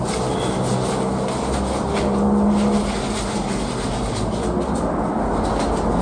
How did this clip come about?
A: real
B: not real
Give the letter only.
A